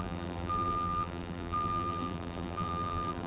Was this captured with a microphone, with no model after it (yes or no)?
no